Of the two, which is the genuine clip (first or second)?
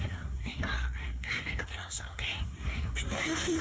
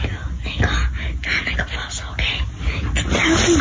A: second